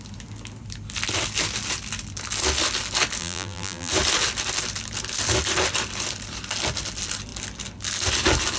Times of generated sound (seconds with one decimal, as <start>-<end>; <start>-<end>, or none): 3.2-3.9